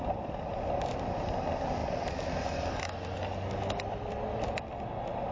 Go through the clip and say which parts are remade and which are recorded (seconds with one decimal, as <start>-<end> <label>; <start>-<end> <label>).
0.0-5.3 recorded